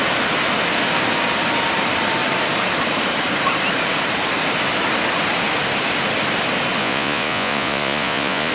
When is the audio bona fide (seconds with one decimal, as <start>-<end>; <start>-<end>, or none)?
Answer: 0.0-6.8